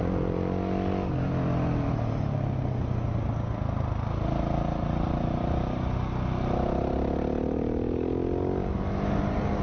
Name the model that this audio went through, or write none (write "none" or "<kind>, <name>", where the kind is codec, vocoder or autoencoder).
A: none